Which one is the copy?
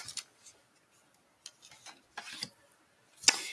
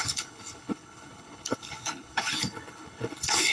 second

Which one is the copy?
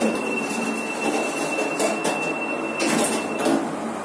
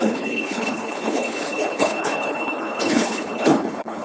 second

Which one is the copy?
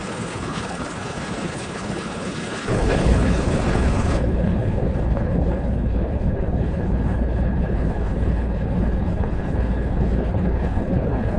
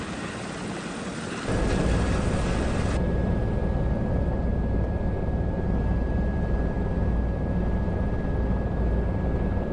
first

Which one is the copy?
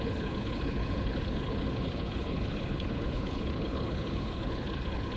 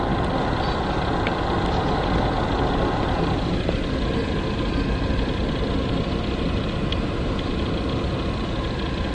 first